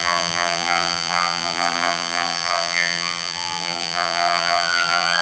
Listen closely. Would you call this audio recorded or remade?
remade